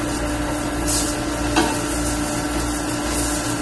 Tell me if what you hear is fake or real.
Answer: real